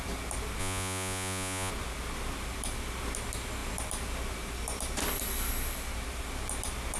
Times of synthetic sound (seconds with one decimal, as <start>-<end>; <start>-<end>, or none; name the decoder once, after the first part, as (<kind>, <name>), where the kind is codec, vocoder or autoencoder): 0.6-1.7 (vocoder, Vocos)